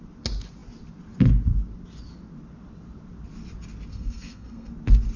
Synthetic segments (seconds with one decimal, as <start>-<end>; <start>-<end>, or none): 3.9-4.7